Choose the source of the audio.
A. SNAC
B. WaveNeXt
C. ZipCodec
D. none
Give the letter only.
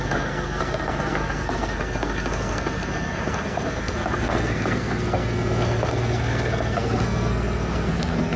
A